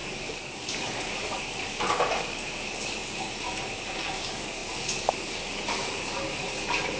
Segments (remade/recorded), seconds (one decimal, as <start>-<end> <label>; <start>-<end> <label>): 0.0-7.0 remade